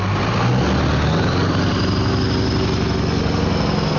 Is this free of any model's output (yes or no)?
yes